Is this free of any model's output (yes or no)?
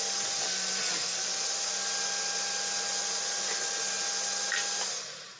yes